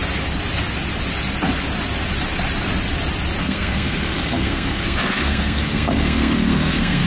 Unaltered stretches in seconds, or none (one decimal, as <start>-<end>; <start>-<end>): 0.0-3.4